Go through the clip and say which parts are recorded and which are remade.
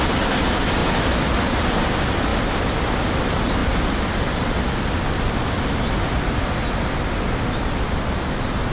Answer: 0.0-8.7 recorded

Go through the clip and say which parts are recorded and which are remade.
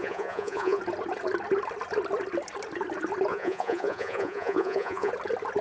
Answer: 0.0-0.8 remade; 0.8-3.3 recorded; 3.3-5.1 remade; 5.1-5.6 recorded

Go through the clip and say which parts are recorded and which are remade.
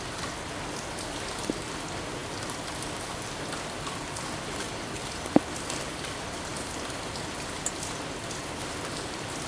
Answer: 0.0-9.5 recorded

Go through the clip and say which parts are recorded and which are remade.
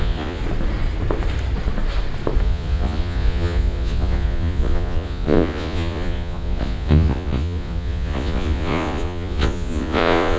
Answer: 0.0-0.4 remade; 0.4-2.4 recorded; 2.4-10.4 remade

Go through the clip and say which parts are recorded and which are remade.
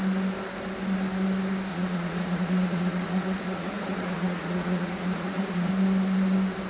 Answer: 0.0-1.7 recorded; 1.7-5.7 remade; 5.7-6.7 recorded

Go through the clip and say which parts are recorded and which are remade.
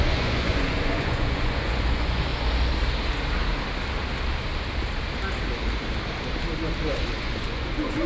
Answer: 0.0-2.3 remade; 2.3-7.2 recorded; 7.2-8.1 remade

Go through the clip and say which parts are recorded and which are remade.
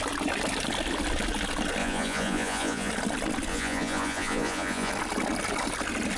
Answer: 0.0-1.8 recorded; 1.8-2.9 remade; 2.9-3.5 recorded; 3.5-4.9 remade; 4.9-6.2 recorded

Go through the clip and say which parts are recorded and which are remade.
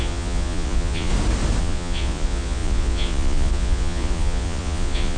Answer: 0.0-1.1 remade; 1.1-1.6 recorded; 1.6-5.2 remade